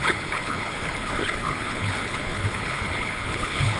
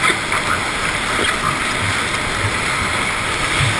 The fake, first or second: first